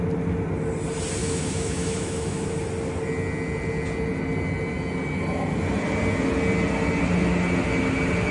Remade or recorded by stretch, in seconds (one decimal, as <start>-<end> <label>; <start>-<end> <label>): 0.0-1.2 recorded; 1.2-2.5 remade; 2.5-8.3 recorded